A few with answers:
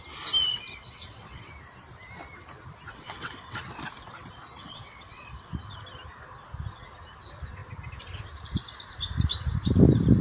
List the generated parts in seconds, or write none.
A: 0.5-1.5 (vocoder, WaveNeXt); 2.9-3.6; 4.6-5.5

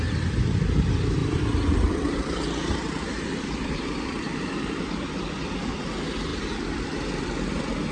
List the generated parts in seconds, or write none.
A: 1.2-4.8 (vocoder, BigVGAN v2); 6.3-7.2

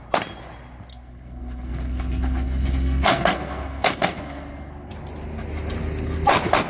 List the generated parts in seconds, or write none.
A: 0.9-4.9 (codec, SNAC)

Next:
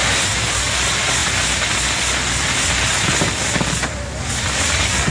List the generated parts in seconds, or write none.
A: none